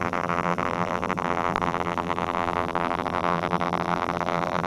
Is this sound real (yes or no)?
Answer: no